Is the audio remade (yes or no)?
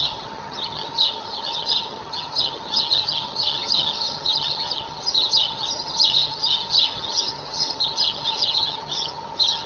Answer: yes